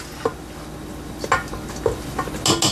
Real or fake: real